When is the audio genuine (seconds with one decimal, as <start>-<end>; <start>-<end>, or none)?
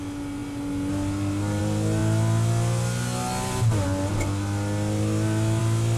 0.0-6.0